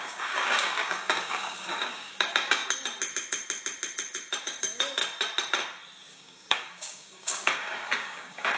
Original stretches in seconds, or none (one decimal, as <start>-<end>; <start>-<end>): 2.6-4.4; 5.0-6.1